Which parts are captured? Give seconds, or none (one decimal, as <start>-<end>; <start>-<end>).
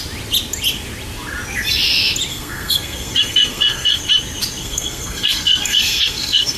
0.0-2.3; 4.0-4.6